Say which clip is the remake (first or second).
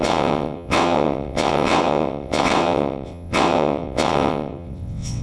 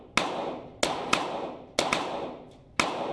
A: first